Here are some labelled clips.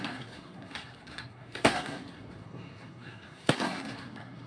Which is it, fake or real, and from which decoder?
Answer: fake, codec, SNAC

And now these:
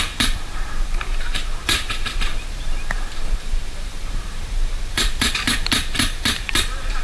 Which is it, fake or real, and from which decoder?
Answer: fake, vocoder, BigVGAN v2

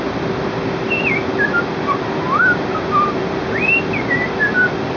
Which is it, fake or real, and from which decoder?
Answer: real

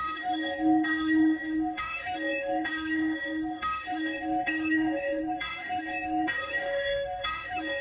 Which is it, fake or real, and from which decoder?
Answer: fake, autoencoder, DAC-VAE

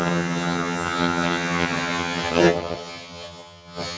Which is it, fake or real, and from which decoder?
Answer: fake, vocoder, HiFi-GAN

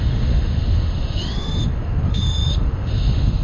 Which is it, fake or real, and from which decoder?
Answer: fake, autoencoder, DAC-VAE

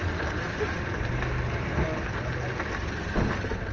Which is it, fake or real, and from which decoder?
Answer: real